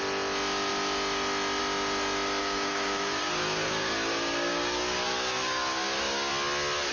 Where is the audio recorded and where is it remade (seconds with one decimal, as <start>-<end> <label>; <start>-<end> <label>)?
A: 0.0-2.4 recorded; 2.4-6.3 remade; 6.3-6.9 recorded

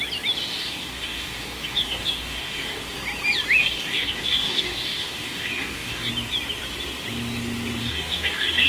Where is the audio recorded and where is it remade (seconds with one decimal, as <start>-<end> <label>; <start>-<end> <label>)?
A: 0.0-0.6 recorded; 0.6-2.8 remade; 2.8-3.6 recorded; 3.6-6.1 remade; 6.1-7.8 recorded; 7.8-8.7 remade

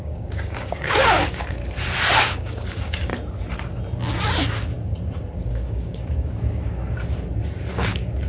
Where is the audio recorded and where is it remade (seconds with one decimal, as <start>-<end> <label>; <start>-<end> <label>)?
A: 0.0-1.6 remade; 1.6-2.2 recorded; 2.2-3.1 remade; 3.1-5.5 recorded; 5.5-6.8 remade; 6.8-7.7 recorded; 7.7-8.3 remade